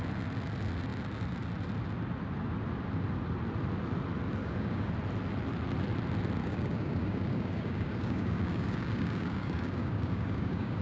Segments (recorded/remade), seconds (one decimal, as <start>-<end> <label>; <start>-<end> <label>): 0.0-4.4 recorded; 4.4-4.9 remade; 4.9-6.4 recorded; 6.4-10.8 remade